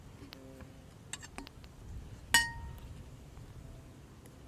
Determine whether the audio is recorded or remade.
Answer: recorded